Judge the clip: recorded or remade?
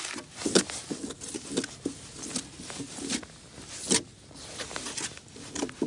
recorded